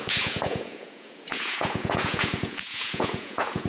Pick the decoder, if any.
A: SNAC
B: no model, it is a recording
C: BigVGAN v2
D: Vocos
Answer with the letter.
D